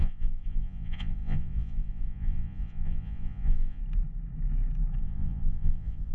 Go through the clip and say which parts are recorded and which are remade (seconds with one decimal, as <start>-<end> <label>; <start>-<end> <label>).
0.0-3.8 remade; 3.8-5.0 recorded; 5.0-6.1 remade